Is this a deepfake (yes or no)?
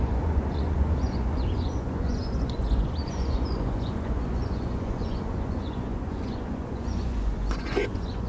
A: yes